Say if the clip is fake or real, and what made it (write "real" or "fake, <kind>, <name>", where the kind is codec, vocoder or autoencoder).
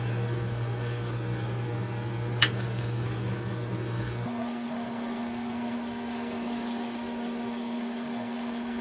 fake, codec, SNAC